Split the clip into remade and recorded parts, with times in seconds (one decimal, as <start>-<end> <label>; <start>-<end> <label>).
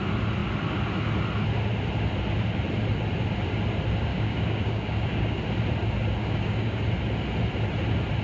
0.0-4.1 recorded; 4.1-5.4 remade; 5.4-6.2 recorded; 6.2-6.8 remade; 6.8-8.2 recorded